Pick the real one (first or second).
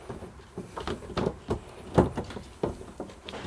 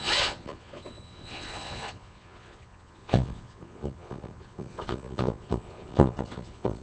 first